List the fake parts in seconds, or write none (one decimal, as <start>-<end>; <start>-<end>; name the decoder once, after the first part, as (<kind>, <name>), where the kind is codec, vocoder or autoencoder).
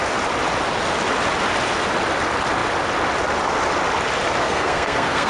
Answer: 4.4-5.3 (codec, SNAC)